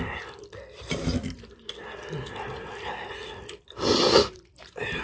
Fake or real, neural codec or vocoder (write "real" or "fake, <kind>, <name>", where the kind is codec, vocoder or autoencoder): real